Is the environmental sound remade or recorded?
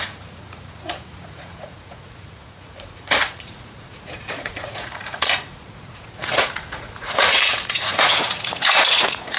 remade